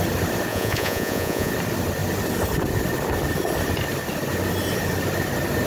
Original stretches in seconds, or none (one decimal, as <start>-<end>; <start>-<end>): 0.0-0.5; 1.5-5.7